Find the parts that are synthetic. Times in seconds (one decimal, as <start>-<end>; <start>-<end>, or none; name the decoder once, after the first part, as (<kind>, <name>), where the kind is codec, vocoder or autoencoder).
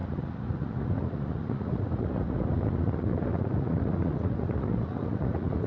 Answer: 0.0-5.7 (vocoder, Vocos)